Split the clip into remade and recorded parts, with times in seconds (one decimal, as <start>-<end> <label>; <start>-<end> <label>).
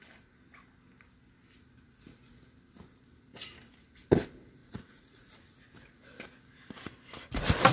0.0-4.6 recorded; 4.6-5.5 remade; 5.5-7.7 recorded